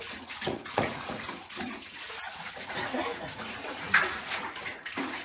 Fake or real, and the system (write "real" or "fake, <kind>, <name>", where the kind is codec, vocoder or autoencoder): fake, vocoder, Vocos